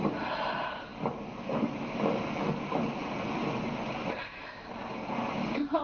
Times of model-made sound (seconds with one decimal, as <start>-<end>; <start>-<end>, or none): none